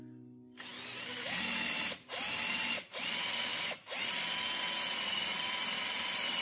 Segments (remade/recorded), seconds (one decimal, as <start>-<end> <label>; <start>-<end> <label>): 0.0-6.4 recorded